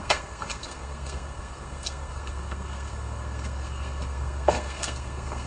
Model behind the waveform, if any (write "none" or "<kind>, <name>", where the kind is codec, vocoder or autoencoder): codec, SNAC